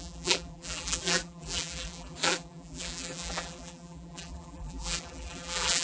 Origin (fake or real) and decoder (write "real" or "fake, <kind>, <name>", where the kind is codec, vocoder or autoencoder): fake, vocoder, BigVGAN v2